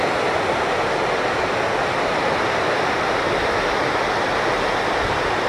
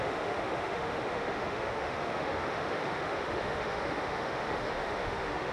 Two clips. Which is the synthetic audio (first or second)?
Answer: second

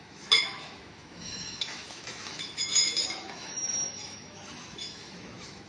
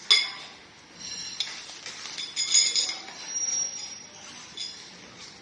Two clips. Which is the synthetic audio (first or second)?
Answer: first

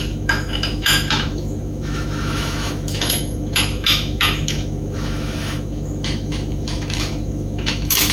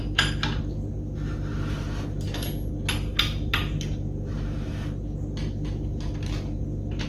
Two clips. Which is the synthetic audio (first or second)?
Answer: first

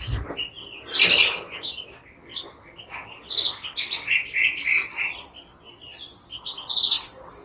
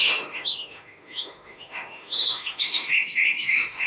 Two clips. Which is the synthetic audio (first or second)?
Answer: second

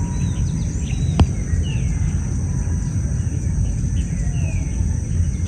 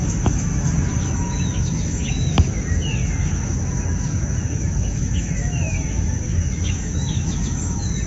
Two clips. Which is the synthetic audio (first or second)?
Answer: second